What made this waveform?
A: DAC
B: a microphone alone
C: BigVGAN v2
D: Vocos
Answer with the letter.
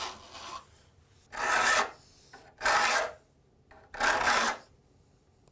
B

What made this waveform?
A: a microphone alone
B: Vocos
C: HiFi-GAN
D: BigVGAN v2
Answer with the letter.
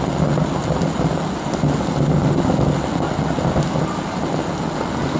A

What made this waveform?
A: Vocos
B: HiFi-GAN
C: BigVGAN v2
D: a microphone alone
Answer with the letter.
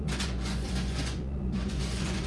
A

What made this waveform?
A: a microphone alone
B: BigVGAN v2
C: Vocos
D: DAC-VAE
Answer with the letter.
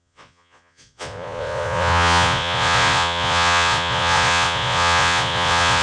C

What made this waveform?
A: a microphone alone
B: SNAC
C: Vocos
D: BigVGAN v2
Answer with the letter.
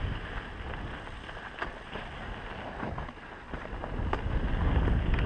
A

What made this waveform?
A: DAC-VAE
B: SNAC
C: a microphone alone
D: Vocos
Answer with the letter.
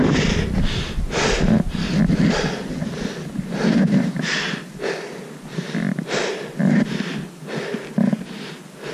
C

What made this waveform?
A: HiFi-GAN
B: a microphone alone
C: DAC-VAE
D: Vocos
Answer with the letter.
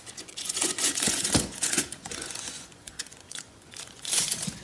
D